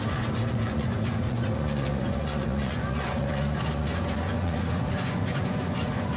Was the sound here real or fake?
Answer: fake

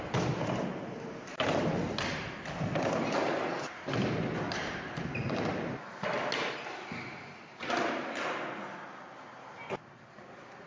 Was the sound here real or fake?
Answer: real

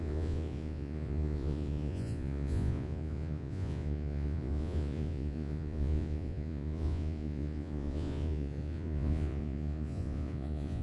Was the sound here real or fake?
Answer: fake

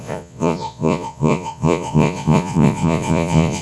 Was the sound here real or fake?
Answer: fake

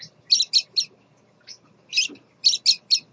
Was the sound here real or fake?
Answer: real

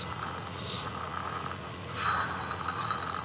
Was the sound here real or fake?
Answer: fake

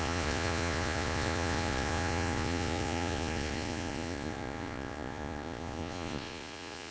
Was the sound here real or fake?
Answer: fake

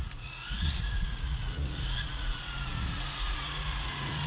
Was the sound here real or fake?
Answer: fake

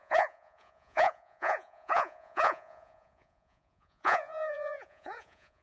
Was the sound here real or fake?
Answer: fake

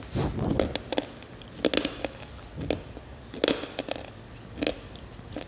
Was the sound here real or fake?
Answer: real